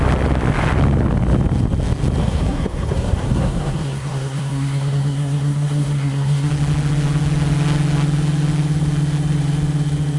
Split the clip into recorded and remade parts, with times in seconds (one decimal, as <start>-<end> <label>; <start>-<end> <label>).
0.0-2.2 recorded; 2.2-6.5 remade; 6.5-10.2 recorded

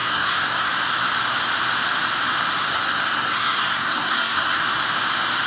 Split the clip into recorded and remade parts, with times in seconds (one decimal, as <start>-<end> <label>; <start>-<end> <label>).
0.0-0.7 remade; 0.7-2.6 recorded; 2.6-4.6 remade; 4.6-5.5 recorded

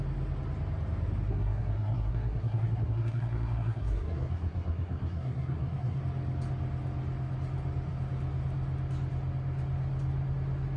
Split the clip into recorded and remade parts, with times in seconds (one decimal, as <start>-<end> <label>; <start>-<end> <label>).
0.0-1.3 recorded; 1.3-6.0 remade; 6.0-10.8 recorded

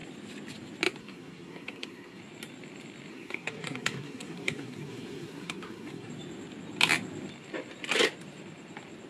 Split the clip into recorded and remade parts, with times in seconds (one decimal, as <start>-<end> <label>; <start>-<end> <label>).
0.0-1.0 recorded; 1.0-2.2 remade; 2.2-3.1 recorded; 3.1-6.1 remade; 6.1-9.1 recorded

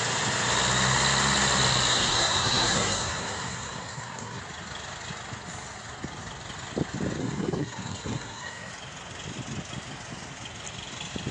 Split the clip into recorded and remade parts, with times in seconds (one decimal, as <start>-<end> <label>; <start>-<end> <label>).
0.0-1.9 recorded; 1.9-4.4 remade; 4.4-7.2 recorded; 7.2-8.7 remade; 8.7-11.3 recorded